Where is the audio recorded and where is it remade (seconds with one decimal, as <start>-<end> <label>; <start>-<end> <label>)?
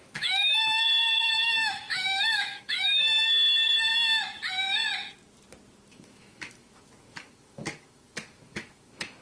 0.0-3.9 remade; 3.9-5.9 recorded; 5.9-9.2 remade